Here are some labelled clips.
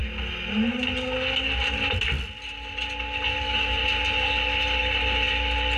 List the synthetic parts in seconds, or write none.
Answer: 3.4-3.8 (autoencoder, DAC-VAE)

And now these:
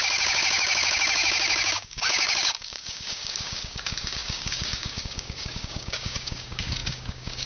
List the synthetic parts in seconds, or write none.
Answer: 0.0-7.5 (codec, DAC)

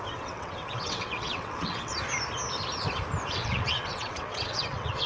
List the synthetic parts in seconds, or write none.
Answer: 0.0-1.9 (vocoder, WaveNeXt); 3.3-5.1

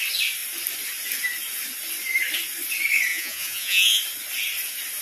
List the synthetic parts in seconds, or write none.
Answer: 3.1-4.0 (vocoder, Vocos)

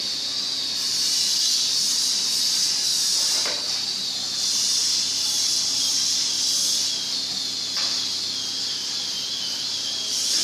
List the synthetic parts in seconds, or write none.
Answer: 0.0-2.9 (vocoder, BigVGAN v2); 4.2-4.8; 9.7-10.4

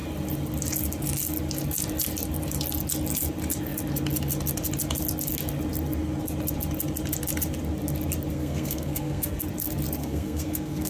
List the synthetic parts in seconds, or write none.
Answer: 8.3-9.4 (codec, SNAC); 10.0-10.9

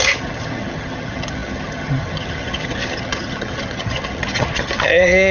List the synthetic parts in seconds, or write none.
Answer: 0.0-5.3 (vocoder, HiFi-GAN)

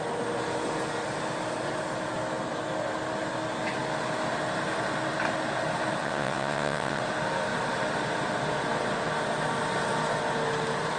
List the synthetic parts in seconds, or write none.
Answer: 6.0-7.0 (vocoder, WaveNeXt)